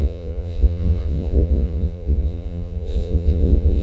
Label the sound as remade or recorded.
remade